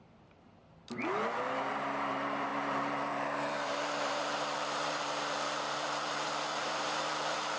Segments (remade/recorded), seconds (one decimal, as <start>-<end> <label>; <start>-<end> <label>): 0.0-0.6 remade; 0.6-1.7 recorded; 1.7-7.6 remade